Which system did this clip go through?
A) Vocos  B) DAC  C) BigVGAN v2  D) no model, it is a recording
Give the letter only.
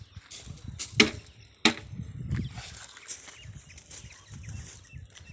D